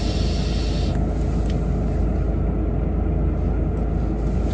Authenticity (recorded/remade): recorded